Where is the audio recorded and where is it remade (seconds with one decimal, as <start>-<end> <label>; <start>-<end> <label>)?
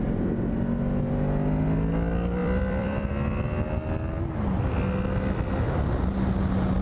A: 0.0-2.4 recorded; 2.4-3.1 remade; 3.1-6.8 recorded